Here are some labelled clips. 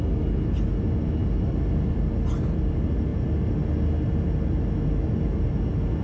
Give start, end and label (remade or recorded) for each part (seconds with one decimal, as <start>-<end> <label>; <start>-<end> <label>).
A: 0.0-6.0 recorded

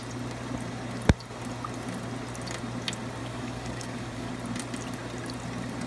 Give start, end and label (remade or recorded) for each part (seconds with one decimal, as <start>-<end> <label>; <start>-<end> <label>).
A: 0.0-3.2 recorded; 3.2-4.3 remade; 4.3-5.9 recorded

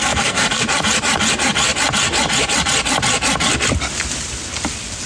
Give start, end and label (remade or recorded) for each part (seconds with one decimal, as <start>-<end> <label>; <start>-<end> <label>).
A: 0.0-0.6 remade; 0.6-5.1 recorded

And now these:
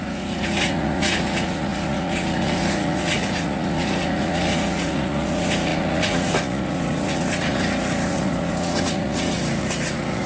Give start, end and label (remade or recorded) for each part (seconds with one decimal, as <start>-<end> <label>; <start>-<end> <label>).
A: 0.0-10.3 remade

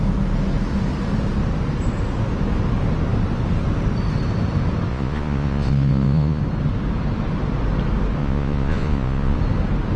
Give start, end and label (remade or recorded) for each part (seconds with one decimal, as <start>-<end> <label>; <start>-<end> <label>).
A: 0.0-4.9 recorded; 4.9-6.4 remade; 6.4-8.2 recorded; 8.2-9.4 remade; 9.4-10.0 recorded

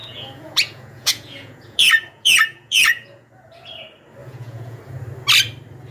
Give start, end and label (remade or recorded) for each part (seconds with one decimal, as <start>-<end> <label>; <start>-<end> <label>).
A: 0.0-3.5 remade; 3.5-4.2 recorded; 4.2-4.8 remade; 4.8-5.9 recorded